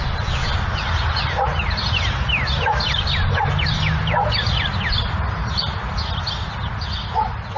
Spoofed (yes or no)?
no